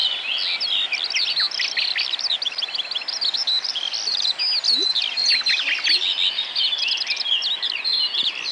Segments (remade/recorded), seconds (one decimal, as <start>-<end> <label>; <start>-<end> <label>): 0.0-8.5 recorded

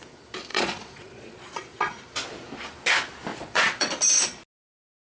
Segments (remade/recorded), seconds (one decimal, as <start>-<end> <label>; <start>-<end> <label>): 0.0-0.5 recorded; 0.5-2.0 remade; 2.0-3.3 recorded; 3.3-4.0 remade; 4.0-5.1 recorded